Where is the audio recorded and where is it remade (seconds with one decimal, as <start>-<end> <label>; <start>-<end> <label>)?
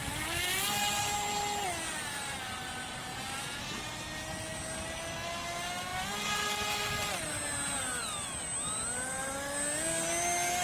0.0-10.6 recorded